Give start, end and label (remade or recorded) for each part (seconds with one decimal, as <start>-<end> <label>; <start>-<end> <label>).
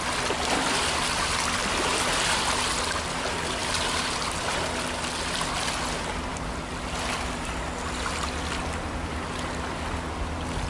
0.0-10.7 recorded